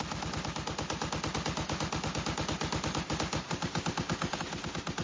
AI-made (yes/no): no